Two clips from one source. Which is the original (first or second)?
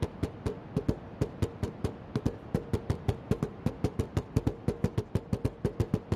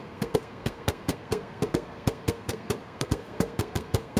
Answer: first